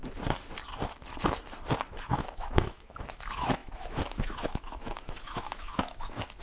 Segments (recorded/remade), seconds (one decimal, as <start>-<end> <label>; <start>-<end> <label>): 0.0-2.0 recorded; 2.0-6.4 remade